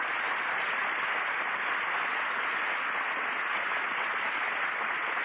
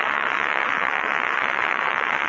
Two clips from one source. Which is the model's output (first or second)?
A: second